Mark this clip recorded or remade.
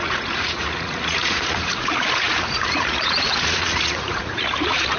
remade